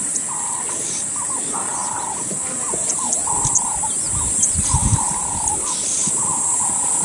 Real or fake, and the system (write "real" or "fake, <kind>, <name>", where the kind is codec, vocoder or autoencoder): real